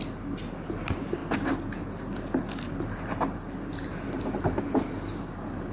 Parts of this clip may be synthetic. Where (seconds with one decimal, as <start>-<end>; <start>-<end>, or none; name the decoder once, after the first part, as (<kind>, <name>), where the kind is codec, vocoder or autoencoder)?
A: none